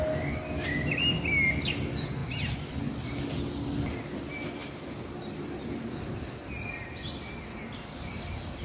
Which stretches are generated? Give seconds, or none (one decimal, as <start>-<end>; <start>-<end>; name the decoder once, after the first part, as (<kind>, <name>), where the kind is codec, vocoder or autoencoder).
2.2-3.3 (vocoder, BigVGAN v2); 4.6-6.3